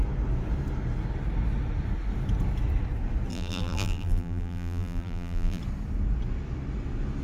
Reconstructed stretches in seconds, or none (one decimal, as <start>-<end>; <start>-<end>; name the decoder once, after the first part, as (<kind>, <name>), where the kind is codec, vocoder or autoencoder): 3.3-5.6 (vocoder, BigVGAN v2)